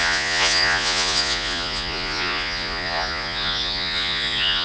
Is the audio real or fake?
fake